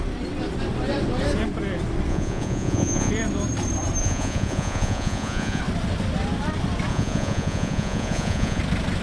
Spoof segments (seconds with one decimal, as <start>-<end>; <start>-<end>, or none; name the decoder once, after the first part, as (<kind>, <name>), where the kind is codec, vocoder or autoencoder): 2.1-3.1 (vocoder, Vocos); 4.0-5.6; 6.9-8.6